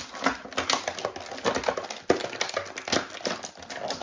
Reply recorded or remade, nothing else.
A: recorded